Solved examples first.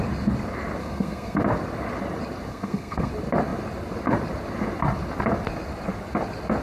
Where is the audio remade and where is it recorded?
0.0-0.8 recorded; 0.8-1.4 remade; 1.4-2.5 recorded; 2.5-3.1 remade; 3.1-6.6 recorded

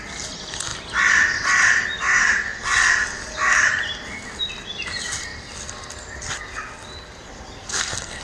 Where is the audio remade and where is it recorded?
0.0-7.6 recorded; 7.6-8.2 remade

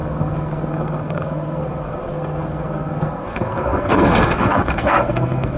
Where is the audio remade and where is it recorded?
0.0-5.6 remade